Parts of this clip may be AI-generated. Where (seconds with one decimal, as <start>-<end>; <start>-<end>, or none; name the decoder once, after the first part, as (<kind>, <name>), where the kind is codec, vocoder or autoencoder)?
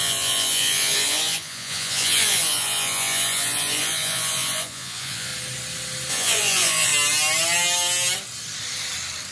0.0-5.3 (vocoder, Vocos); 6.1-6.9